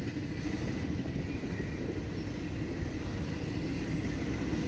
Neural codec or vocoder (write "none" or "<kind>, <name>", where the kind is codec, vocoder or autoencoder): none